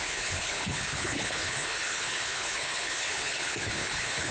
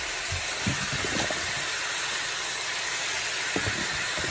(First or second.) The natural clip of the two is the second